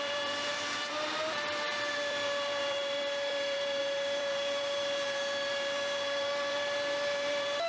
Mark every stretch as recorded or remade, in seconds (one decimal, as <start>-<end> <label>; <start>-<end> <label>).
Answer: 0.0-7.7 remade